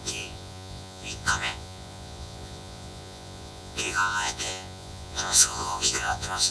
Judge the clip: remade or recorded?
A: remade